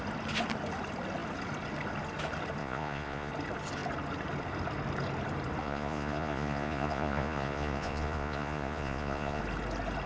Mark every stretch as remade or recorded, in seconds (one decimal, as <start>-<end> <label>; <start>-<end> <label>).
0.0-2.6 recorded; 2.6-3.3 remade; 3.3-5.6 recorded; 5.6-9.4 remade; 9.4-10.1 recorded